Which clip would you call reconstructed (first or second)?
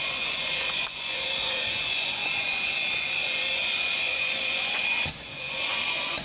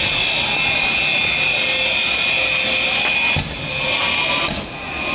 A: first